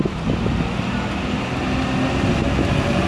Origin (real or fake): real